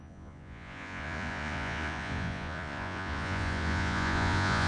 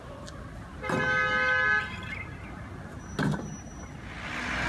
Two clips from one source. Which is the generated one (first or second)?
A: first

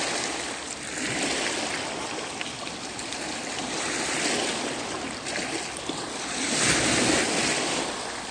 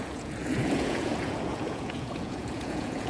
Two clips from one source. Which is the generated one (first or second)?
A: second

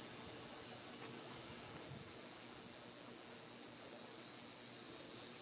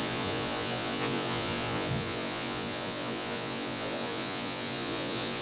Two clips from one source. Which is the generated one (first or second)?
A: second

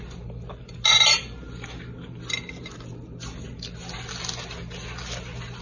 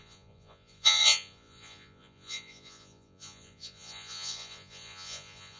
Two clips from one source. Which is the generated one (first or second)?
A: second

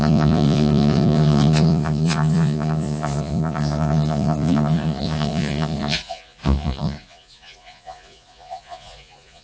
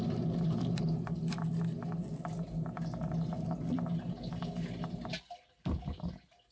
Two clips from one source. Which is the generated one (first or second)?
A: first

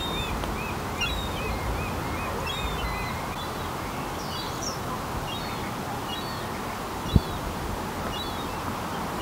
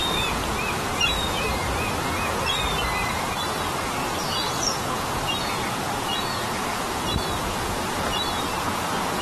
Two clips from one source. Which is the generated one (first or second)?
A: second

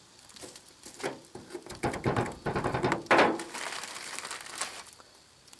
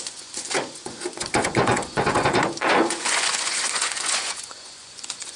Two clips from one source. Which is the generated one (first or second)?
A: second